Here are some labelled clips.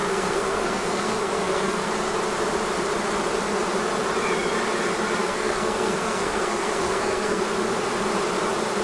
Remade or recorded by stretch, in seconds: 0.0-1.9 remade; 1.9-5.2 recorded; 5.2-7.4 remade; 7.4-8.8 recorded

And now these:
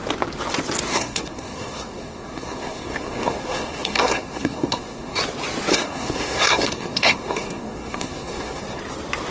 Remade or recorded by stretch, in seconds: 0.0-0.9 recorded; 0.9-5.2 remade; 5.2-5.7 recorded; 5.7-8.8 remade; 8.8-9.3 recorded

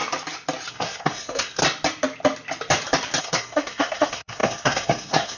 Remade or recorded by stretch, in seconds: 0.0-0.7 recorded; 0.7-1.6 remade; 1.6-3.2 recorded; 3.2-5.4 remade

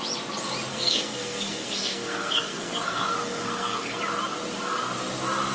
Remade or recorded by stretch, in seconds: 0.0-0.7 recorded; 0.7-4.0 remade; 4.0-5.5 recorded

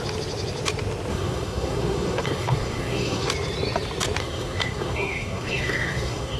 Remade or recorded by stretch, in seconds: 0.0-1.1 recorded; 1.1-3.3 remade; 3.3-4.2 recorded; 4.2-6.4 remade